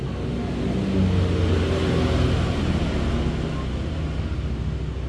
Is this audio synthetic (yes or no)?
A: no